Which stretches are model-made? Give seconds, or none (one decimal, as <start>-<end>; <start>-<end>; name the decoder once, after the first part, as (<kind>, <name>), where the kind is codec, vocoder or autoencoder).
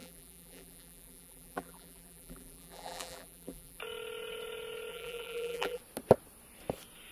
0.0-3.8 (vocoder, BigVGAN v2); 4.9-5.8